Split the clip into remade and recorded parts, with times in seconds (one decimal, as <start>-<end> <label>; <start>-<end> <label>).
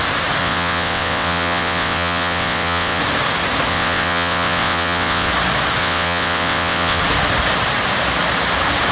0.0-0.4 recorded; 0.4-3.0 remade; 3.0-3.7 recorded; 3.7-5.3 remade; 5.3-5.8 recorded; 5.8-7.0 remade; 7.0-8.9 recorded